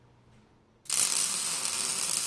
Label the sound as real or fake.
real